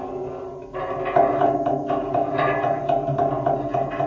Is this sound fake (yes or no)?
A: no